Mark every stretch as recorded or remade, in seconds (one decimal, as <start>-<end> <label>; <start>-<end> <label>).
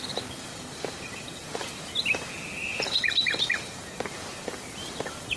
0.0-0.5 recorded; 0.5-1.8 remade; 1.8-2.6 recorded; 2.6-3.7 remade; 3.7-5.4 recorded